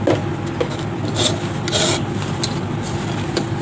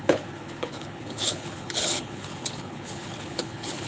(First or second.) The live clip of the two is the first